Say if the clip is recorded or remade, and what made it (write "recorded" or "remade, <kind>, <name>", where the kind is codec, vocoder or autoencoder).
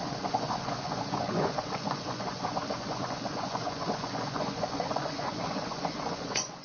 remade, vocoder, Vocos